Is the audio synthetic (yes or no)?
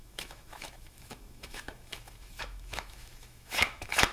yes